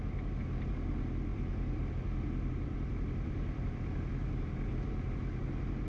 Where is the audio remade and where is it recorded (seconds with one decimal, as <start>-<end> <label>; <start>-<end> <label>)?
0.0-1.3 recorded; 1.3-4.8 remade; 4.8-5.9 recorded